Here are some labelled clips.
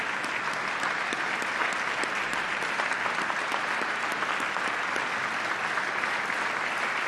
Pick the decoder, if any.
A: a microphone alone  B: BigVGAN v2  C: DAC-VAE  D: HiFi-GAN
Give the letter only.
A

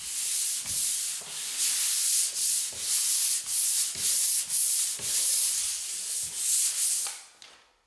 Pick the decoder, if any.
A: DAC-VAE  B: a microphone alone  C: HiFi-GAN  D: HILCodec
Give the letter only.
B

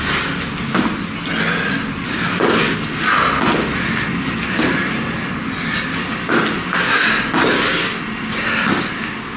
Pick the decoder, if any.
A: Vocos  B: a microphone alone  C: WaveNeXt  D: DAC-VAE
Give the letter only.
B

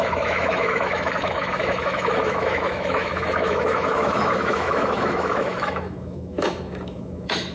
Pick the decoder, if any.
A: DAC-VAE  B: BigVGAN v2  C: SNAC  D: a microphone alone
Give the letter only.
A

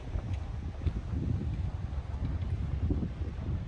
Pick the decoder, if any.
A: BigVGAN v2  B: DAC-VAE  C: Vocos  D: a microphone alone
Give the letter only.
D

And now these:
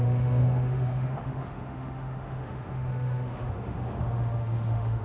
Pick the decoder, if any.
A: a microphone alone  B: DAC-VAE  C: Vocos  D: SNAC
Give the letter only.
B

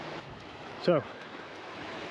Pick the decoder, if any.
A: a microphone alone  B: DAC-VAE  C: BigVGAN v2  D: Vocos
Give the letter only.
B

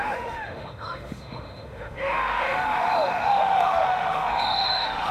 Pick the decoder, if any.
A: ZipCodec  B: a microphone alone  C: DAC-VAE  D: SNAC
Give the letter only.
C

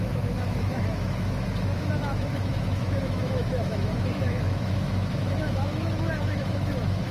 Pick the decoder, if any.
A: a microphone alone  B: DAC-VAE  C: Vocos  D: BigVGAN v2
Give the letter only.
B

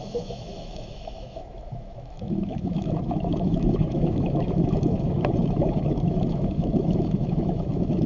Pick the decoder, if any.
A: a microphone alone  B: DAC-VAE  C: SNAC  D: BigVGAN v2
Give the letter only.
B